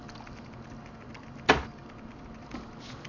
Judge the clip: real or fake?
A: real